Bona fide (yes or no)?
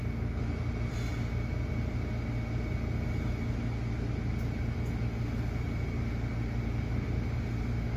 yes